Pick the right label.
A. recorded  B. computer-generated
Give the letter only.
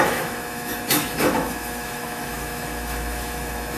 B